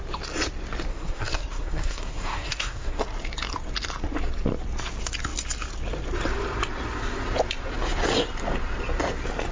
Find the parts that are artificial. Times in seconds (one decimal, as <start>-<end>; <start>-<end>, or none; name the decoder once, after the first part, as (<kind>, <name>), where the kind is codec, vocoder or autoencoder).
0.9-3.0 (codec, SNAC)